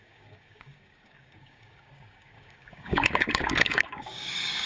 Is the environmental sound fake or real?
fake